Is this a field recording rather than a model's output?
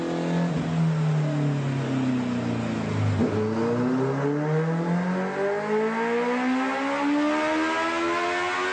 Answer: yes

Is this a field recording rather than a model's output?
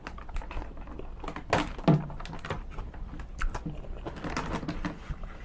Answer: yes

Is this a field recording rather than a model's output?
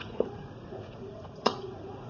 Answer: no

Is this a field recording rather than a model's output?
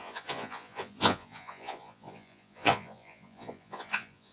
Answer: no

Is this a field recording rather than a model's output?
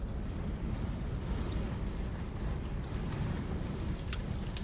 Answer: no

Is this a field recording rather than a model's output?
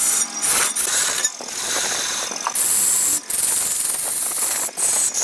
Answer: yes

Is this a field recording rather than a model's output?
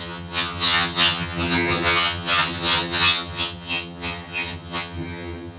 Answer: no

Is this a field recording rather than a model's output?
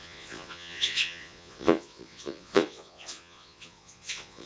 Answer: no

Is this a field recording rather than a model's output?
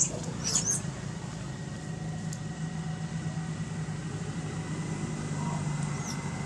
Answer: yes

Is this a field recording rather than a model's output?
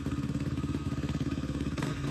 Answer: no